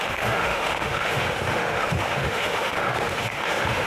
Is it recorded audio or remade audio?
remade